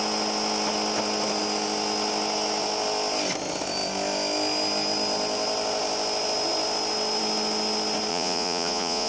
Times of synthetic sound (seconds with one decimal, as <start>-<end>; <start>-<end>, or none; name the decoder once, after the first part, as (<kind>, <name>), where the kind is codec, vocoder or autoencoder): 8.1-9.1 (vocoder, Vocos)